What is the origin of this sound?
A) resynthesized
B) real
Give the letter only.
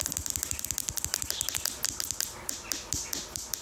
B